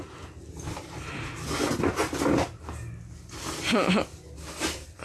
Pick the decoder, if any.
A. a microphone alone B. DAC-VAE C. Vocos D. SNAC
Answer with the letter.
A